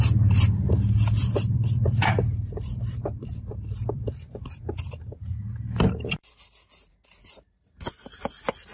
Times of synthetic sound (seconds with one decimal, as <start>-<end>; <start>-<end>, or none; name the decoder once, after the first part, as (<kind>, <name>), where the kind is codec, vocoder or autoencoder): 1.2-5.6 (vocoder, BigVGAN v2); 6.2-8.2